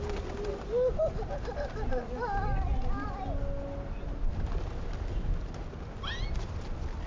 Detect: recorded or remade recorded